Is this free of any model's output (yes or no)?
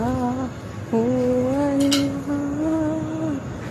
yes